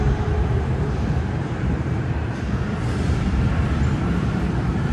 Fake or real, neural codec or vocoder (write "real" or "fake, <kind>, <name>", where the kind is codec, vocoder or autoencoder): fake, vocoder, BigVGAN v2